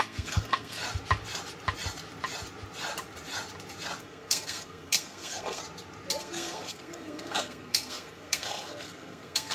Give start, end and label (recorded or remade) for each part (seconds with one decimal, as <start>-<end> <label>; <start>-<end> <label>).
0.0-0.8 remade; 0.8-4.0 recorded; 4.0-5.6 remade; 5.6-6.2 recorded; 6.2-9.5 remade